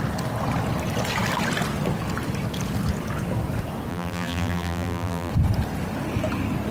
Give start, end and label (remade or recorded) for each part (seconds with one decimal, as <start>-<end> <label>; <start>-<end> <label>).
0.0-3.9 recorded; 3.9-5.3 remade; 5.3-6.7 recorded